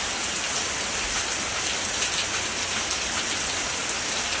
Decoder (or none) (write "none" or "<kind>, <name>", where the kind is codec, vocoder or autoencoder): none